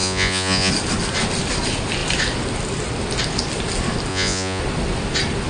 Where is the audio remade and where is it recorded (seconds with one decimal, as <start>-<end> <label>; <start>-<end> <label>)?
0.0-0.7 remade; 0.7-4.1 recorded; 4.1-4.6 remade; 4.6-5.5 recorded